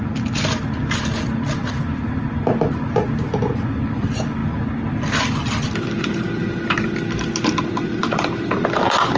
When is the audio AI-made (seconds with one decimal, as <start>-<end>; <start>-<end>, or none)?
none